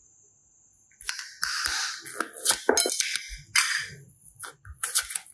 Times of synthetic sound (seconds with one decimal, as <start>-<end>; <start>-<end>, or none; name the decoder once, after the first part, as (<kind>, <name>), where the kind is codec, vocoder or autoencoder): none